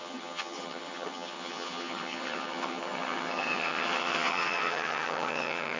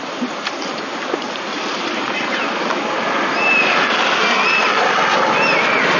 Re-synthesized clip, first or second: first